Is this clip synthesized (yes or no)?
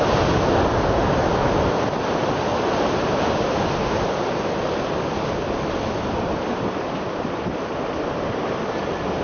no